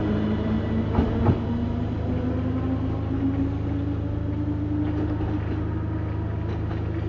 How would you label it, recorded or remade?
recorded